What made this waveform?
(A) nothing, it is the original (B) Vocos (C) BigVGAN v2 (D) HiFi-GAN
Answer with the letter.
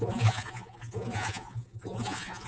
B